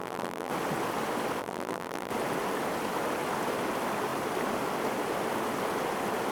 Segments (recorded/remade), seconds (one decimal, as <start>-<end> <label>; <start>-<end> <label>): 0.0-0.5 remade; 0.5-1.4 recorded; 1.4-2.1 remade; 2.1-6.3 recorded